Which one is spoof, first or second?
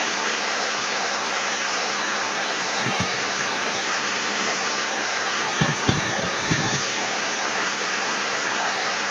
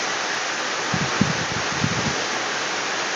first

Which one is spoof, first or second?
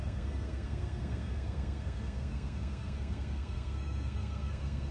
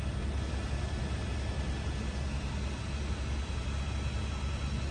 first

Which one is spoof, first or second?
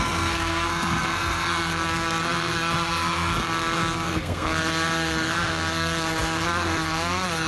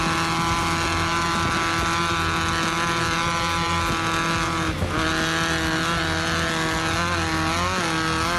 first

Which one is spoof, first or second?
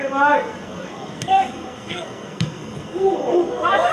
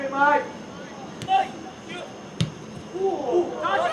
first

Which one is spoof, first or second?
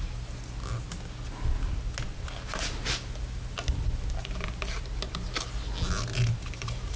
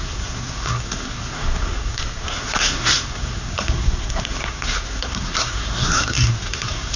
second